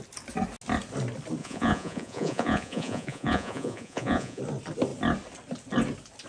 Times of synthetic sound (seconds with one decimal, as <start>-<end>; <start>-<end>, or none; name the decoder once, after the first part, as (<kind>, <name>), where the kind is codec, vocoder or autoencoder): 1.4-4.4 (vocoder, Vocos)